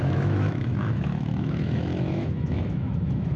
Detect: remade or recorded remade